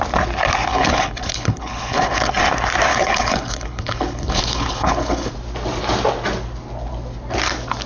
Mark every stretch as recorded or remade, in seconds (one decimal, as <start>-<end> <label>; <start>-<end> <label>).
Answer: 0.0-0.7 recorded; 0.7-2.3 remade; 2.3-2.9 recorded; 2.9-5.3 remade; 5.3-7.9 recorded